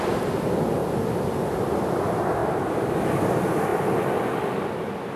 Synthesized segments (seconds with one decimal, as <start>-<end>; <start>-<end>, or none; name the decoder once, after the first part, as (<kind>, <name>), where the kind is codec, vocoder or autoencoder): 0.0-0.8 (vocoder, BigVGAN v2); 1.7-2.4; 3.0-3.7; 4.7-5.2